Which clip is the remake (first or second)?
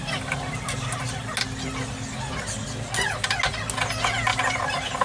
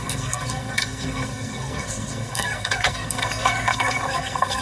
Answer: second